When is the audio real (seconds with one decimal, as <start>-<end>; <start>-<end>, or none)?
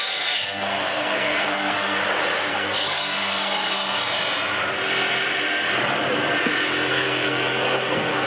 2.0-2.5; 4.0-6.9